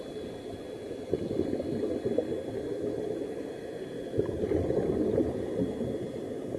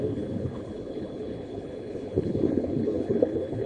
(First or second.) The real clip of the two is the first